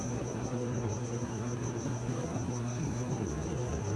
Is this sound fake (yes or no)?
yes